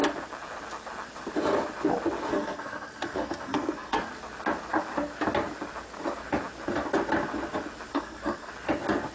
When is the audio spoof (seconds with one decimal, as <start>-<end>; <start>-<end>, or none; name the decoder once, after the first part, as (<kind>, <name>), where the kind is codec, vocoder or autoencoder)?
2.3-4.1 (codec, SNAC); 7.9-8.5